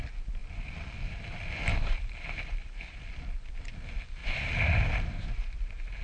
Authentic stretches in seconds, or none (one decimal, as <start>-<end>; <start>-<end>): 0.0-1.7; 3.5-4.2; 5.6-6.0